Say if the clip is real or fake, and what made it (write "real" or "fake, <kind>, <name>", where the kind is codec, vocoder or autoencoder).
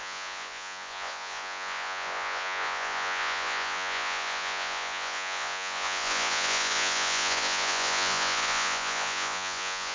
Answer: fake, vocoder, Vocos